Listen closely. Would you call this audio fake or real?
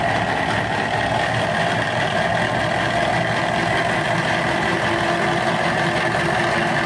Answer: real